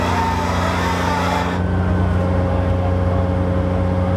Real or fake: real